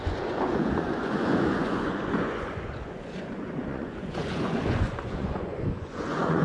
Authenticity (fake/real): fake